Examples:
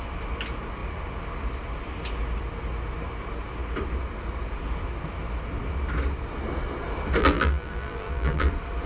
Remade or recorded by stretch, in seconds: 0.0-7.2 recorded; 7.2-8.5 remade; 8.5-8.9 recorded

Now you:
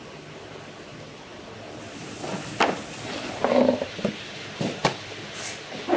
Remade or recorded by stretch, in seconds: 0.0-1.3 recorded; 1.3-4.2 remade; 4.2-4.8 recorded; 4.8-5.5 remade; 5.5-6.0 recorded